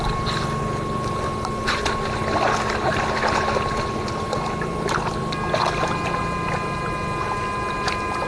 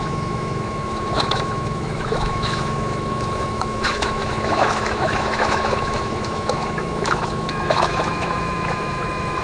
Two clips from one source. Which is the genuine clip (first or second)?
first